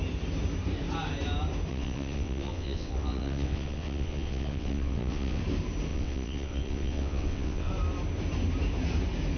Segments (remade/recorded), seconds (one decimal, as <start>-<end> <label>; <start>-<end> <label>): 0.0-1.7 recorded; 1.7-5.4 remade; 5.4-5.9 recorded; 5.9-7.7 remade; 7.7-9.4 recorded